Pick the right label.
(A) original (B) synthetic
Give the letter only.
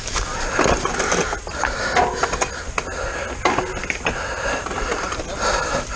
A